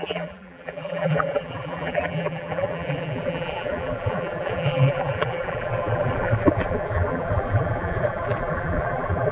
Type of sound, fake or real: fake